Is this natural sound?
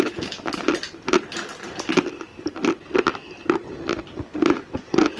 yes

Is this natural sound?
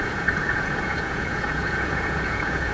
no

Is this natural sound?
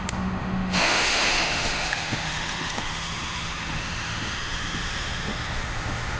no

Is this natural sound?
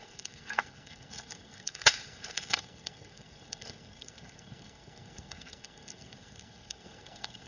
no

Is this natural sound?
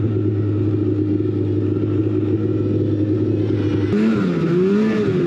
yes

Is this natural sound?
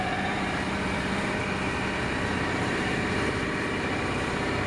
no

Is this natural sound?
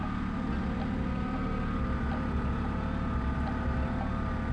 yes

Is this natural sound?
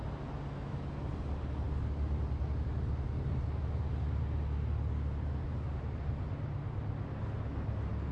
yes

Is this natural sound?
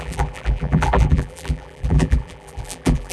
no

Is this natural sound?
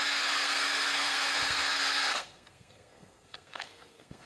no